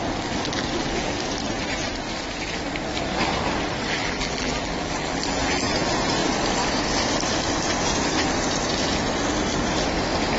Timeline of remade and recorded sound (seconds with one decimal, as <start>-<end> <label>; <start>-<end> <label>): 0.0-4.0 recorded; 4.0-5.7 remade; 5.7-10.4 recorded